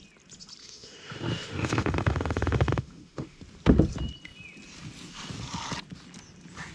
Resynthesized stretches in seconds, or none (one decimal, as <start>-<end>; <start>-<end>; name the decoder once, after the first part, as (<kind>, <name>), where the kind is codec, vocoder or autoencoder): 0.6-3.4 (autoencoder, DAC-VAE)